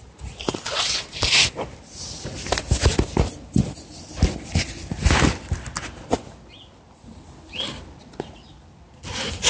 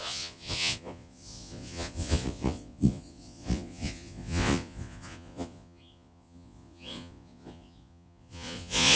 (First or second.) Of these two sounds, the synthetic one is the second